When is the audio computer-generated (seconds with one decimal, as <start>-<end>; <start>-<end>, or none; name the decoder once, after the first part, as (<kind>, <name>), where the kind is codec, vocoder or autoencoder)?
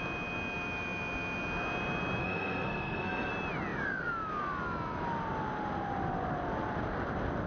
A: 2.2-3.3 (codec, SNAC)